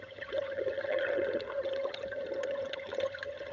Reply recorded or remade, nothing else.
remade